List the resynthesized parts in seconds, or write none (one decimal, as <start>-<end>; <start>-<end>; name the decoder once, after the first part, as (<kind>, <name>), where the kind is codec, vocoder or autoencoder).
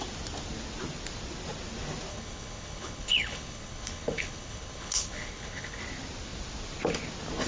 2.1-5.8 (codec, HILCodec)